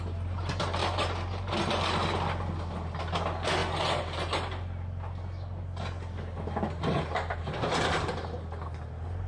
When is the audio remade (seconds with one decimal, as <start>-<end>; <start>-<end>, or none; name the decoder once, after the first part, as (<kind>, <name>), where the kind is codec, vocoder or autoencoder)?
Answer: none

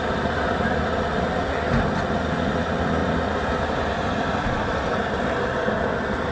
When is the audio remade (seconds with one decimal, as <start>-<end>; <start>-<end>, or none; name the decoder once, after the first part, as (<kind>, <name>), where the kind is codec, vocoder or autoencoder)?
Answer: none